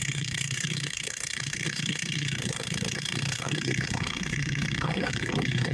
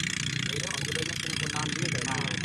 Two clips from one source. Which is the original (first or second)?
second